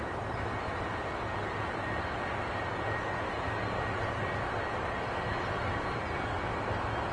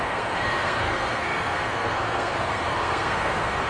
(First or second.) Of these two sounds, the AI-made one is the second